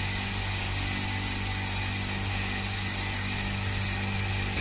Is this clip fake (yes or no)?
no